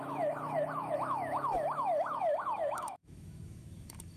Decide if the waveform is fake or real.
fake